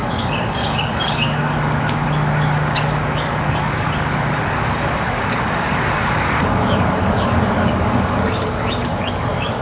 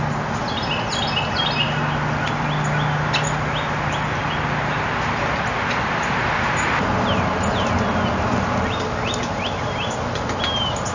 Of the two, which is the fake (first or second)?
first